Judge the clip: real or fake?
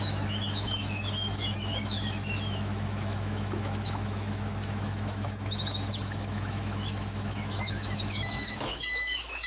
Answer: fake